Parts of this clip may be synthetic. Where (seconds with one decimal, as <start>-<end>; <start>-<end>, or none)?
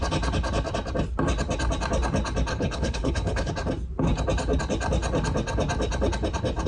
2.5-3.5